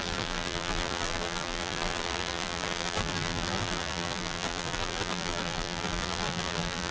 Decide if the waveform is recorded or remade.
remade